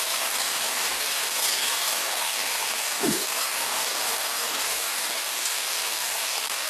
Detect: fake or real fake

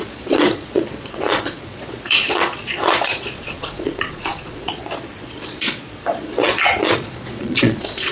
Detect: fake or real fake